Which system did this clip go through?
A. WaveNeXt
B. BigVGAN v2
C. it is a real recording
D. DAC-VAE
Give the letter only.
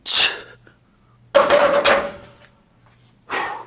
C